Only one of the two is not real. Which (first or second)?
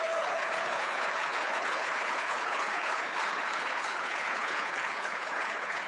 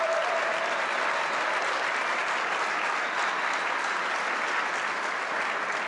first